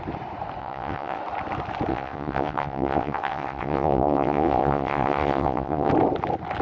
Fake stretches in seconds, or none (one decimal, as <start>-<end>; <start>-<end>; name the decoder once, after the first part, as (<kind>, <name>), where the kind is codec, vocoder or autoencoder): 0.6-1.2 (vocoder, WaveNeXt); 1.9-5.9